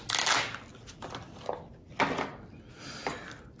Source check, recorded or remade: recorded